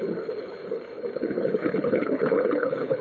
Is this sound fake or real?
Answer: fake